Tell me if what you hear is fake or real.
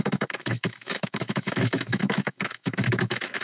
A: fake